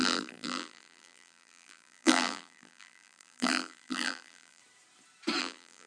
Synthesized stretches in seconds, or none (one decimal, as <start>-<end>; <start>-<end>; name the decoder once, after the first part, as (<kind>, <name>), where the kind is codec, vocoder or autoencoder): 0.0-4.6 (vocoder, BigVGAN v2); 5.4-5.9

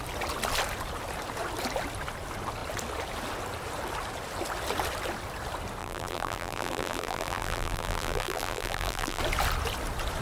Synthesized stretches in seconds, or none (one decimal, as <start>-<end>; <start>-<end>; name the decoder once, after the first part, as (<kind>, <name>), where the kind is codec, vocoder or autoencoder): 5.8-9.2 (vocoder, BigVGAN v2)

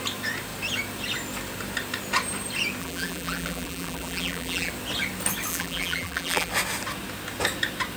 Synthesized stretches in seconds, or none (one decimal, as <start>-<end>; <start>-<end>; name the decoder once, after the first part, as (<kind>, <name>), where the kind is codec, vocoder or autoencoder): 2.8-4.7 (vocoder, BigVGAN v2); 5.5-6.5

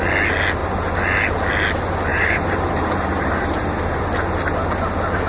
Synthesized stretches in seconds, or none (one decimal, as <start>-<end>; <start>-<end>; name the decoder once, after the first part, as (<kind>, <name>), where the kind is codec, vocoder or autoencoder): 2.1-4.0 (vocoder, BigVGAN v2)

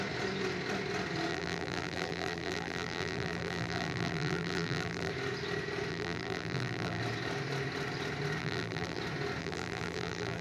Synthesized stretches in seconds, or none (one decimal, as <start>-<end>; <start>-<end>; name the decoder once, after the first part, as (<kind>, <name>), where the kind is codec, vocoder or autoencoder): 1.3-5.1 (vocoder, BigVGAN v2); 5.9-7.0; 8.4-9.0; 9.4-10.4

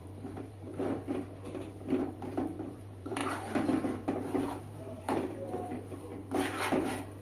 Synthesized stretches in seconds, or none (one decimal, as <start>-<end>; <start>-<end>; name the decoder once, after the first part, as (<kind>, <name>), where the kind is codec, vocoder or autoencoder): 0.0-0.7 (vocoder, BigVGAN v2); 2.0-3.2; 4.6-6.1; 6.8-7.2

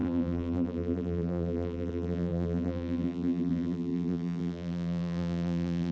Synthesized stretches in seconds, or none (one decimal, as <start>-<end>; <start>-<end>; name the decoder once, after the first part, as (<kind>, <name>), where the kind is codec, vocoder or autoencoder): 0.0-5.9 (vocoder, BigVGAN v2)